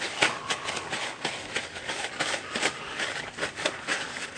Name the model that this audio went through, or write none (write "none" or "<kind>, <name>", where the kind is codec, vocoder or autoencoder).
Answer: codec, DAC